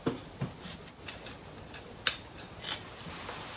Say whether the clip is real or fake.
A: real